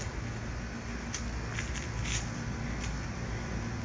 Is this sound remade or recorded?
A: recorded